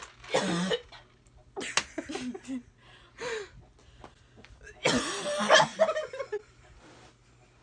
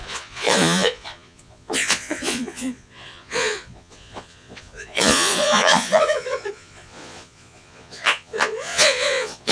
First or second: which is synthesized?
second